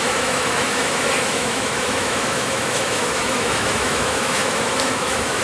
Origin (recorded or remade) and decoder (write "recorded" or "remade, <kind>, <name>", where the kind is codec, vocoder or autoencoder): remade, autoencoder, DAC-VAE